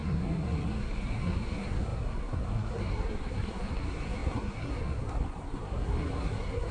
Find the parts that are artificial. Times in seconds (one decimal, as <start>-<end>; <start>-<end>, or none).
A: 0.0-6.7